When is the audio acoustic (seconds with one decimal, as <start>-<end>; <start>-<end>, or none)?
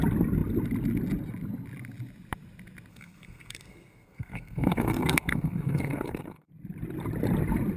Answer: 0.0-2.9; 6.5-7.8